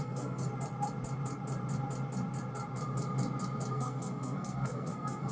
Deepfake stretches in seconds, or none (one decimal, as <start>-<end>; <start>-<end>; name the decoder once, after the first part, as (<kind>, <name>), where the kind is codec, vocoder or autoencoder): 0.0-0.5 (codec, SNAC); 3.7-5.3